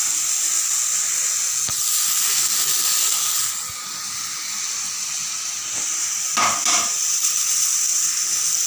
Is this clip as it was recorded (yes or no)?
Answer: yes